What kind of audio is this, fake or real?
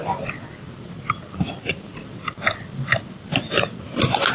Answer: real